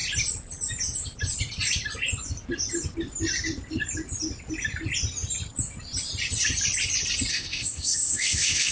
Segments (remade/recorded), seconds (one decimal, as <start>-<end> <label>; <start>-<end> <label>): 0.0-7.3 recorded; 7.3-8.7 remade

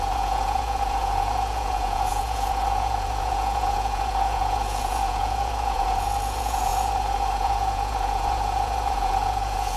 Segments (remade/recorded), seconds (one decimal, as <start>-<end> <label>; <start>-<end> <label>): 0.0-9.8 remade

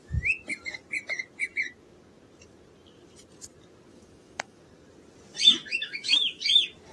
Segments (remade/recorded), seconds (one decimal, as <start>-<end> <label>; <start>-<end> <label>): 0.0-3.9 recorded; 3.9-4.6 remade; 4.6-5.7 recorded; 5.7-6.5 remade; 6.5-6.9 recorded

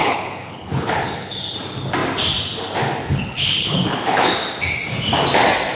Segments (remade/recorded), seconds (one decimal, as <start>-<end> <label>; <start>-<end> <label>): 0.0-1.4 remade; 1.4-3.0 recorded; 3.0-4.3 remade; 4.3-5.8 recorded

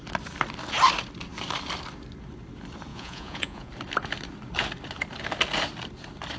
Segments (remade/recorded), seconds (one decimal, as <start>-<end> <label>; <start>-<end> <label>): 0.0-2.9 recorded; 2.9-3.7 remade; 3.7-6.4 recorded